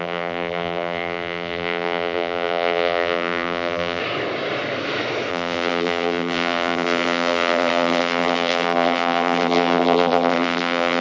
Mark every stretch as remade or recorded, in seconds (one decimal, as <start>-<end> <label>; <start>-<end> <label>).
0.0-4.0 remade; 4.0-5.3 recorded; 5.3-11.0 remade